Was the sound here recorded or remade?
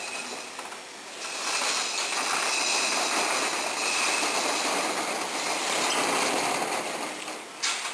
recorded